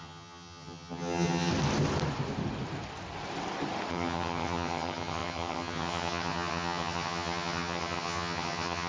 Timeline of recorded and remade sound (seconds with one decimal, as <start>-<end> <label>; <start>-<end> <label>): 0.0-1.5 remade; 1.5-3.9 recorded; 3.9-8.9 remade